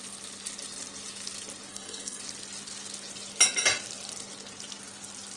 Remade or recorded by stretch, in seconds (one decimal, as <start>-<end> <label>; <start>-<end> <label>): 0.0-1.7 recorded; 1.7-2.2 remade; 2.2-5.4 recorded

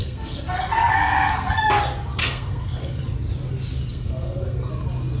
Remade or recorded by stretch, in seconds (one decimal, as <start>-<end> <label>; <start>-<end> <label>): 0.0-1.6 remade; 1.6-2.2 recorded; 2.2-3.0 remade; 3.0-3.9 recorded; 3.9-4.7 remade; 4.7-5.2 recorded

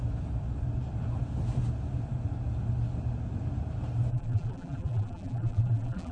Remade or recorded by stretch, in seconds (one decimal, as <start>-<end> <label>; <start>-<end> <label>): 0.0-4.1 recorded; 4.1-6.1 remade

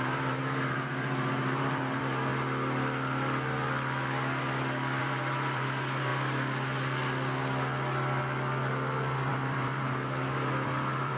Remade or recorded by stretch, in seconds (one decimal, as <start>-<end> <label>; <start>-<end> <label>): 0.0-2.3 remade; 2.3-5.0 recorded; 5.0-6.1 remade; 6.1-9.3 recorded; 9.3-11.2 remade

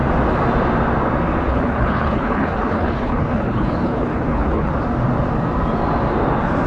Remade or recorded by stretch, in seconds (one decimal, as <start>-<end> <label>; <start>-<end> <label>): 0.0-1.5 recorded; 1.5-4.7 remade; 4.7-6.7 recorded

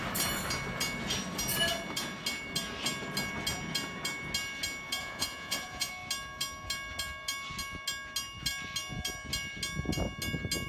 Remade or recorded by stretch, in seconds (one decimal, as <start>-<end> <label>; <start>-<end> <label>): 0.0-5.0 recorded; 5.0-5.9 remade; 5.9-10.7 recorded

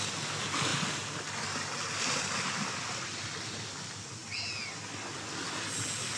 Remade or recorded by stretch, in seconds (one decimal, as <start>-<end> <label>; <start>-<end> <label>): 0.0-6.2 recorded

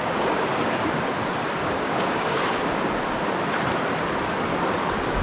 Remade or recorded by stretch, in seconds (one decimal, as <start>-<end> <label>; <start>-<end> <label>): 0.0-1.1 remade; 1.1-1.6 recorded; 1.6-2.8 remade; 2.8-5.2 recorded